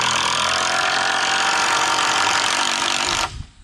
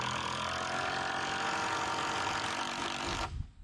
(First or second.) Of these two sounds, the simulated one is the first